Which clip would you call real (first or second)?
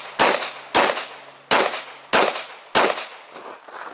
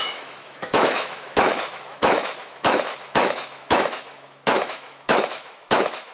first